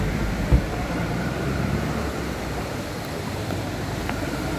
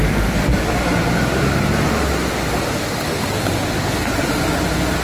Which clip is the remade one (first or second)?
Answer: first